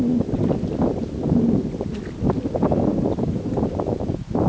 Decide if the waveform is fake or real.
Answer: real